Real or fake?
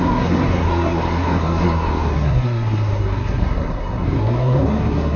fake